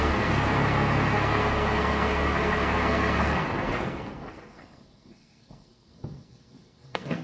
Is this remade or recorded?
remade